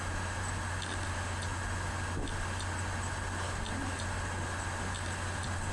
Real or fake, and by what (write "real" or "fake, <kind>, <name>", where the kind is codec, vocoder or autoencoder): real